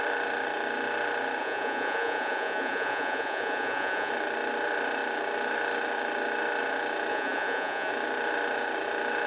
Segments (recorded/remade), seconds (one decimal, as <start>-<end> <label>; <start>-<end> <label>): 0.0-1.4 recorded; 1.4-4.1 remade; 4.1-7.1 recorded; 7.1-7.9 remade; 7.9-9.3 recorded